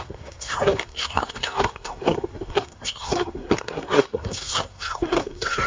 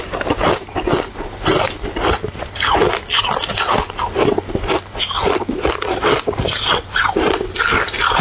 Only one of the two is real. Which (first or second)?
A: second